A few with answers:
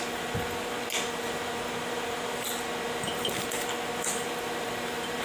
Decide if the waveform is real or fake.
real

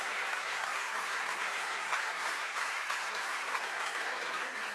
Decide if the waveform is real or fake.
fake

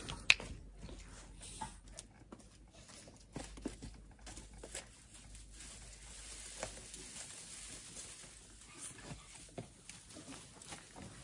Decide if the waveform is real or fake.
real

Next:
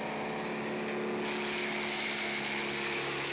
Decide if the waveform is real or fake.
real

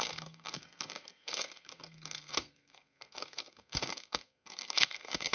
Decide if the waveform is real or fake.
fake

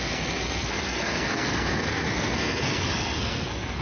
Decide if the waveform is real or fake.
fake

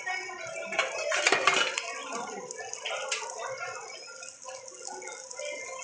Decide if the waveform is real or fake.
real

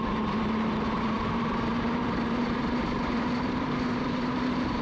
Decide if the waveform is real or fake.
fake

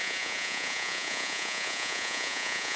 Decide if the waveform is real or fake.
fake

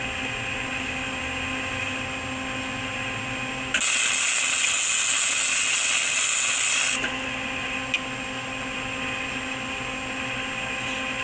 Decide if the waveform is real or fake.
real